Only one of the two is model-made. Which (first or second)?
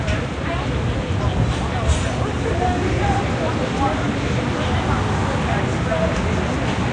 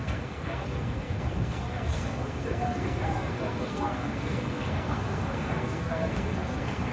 second